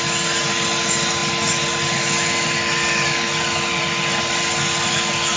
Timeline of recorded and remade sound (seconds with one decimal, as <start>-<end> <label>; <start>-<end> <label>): 0.0-5.4 recorded